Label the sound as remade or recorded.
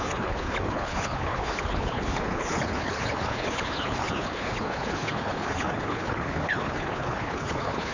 remade